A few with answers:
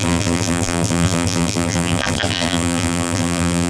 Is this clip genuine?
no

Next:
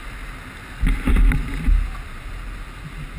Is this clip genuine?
yes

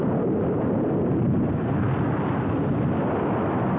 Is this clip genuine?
yes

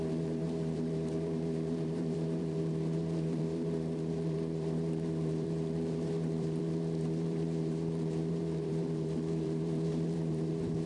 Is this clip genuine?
no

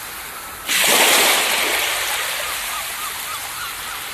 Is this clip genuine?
yes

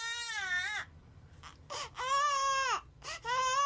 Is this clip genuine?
yes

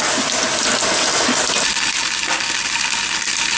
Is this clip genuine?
yes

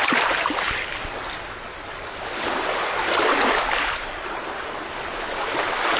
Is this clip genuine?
yes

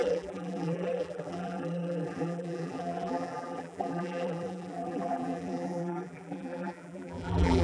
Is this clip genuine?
no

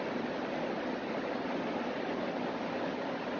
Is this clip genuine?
yes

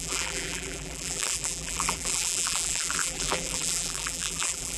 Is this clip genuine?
no